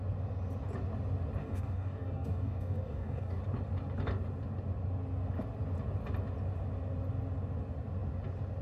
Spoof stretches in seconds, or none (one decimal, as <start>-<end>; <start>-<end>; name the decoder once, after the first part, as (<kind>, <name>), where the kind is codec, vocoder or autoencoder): 1.4-3.4 (codec, DAC)